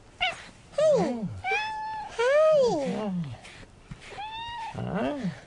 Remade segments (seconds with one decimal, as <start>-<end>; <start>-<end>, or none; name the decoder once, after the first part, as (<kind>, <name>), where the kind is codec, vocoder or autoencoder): none